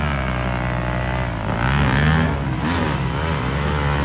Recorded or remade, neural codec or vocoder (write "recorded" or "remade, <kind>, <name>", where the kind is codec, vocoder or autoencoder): recorded